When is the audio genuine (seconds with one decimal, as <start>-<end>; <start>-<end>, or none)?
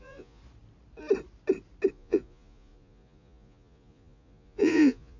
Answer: 0.4-1.9